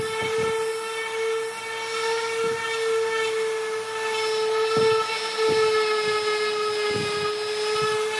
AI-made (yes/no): no